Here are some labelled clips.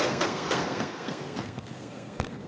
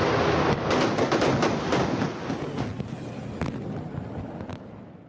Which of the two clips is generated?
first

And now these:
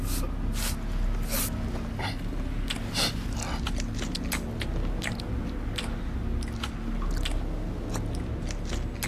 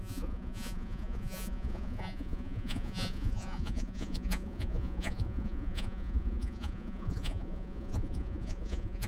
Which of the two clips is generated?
second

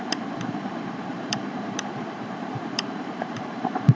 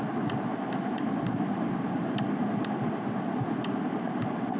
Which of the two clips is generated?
first